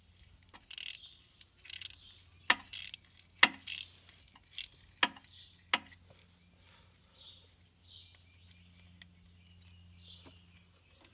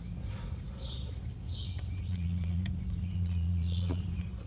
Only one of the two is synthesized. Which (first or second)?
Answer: second